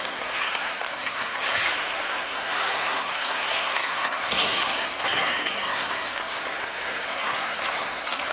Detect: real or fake fake